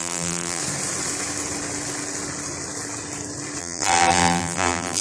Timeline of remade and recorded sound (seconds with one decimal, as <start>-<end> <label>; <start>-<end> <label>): 0.0-0.6 remade; 0.6-3.6 recorded; 3.6-5.0 remade